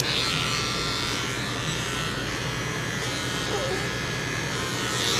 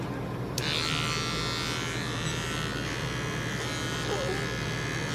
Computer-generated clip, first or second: first